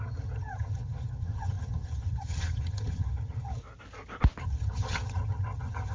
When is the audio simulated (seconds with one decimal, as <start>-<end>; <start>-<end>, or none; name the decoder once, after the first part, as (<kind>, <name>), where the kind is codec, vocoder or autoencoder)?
0.0-3.6 (vocoder, HiFi-GAN); 4.4-5.9